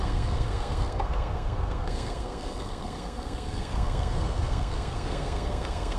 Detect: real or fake fake